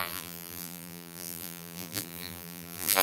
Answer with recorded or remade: remade